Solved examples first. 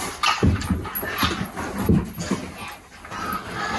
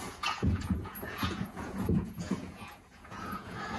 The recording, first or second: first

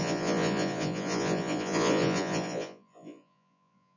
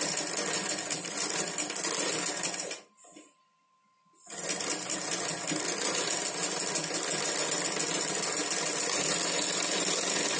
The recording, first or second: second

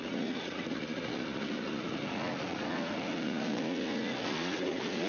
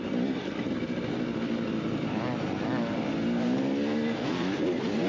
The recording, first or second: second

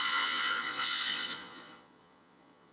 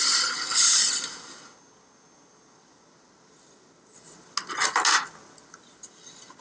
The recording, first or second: second